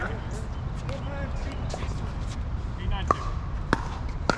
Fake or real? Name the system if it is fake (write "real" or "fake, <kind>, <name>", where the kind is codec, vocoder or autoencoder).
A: real